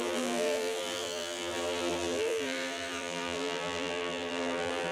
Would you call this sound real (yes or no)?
no